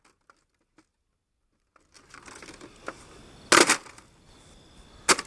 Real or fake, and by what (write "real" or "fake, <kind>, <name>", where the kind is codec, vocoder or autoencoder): real